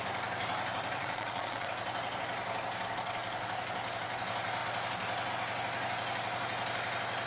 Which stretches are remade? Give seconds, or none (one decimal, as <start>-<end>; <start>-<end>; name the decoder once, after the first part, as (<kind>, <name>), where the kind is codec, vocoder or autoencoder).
1.0-1.7 (vocoder, Vocos)